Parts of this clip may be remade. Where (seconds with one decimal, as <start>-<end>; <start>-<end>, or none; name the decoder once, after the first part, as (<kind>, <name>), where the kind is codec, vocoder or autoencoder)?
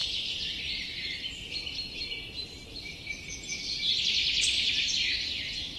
0.0-2.1 (vocoder, BigVGAN v2)